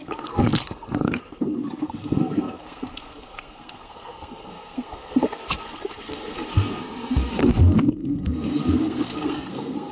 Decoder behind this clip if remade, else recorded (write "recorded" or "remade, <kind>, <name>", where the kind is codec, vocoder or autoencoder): remade, codec, SNAC